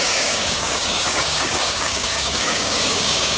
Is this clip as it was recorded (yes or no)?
no